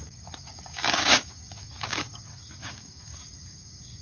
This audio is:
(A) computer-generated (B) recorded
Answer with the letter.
A